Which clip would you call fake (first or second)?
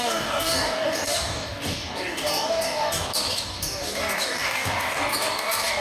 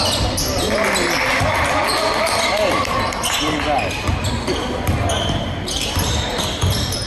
first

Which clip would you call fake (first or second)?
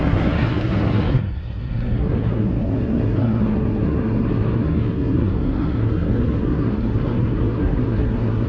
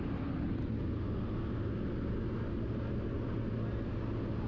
first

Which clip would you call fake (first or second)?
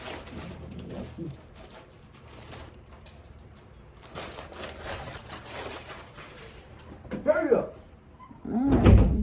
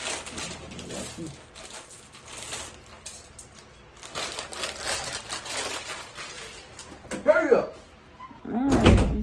first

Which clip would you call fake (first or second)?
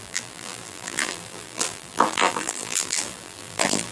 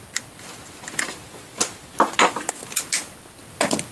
first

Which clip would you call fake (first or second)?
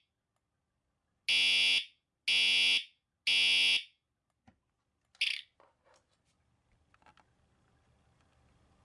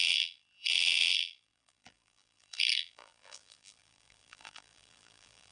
second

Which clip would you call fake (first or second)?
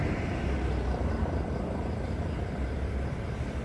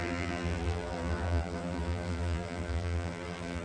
second